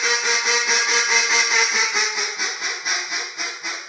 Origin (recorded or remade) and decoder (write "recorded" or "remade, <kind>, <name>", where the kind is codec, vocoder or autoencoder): recorded